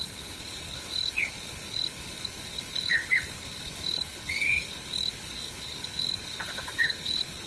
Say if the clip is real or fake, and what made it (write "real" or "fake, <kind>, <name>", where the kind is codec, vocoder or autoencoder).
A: fake, codec, HILCodec